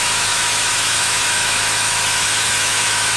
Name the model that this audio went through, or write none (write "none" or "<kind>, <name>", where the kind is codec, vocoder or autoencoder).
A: autoencoder, DAC-VAE